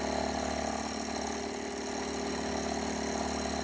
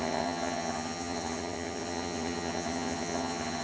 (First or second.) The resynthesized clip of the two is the second